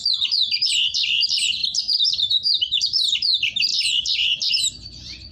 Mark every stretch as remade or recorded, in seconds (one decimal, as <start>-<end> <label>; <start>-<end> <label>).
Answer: 0.0-5.3 remade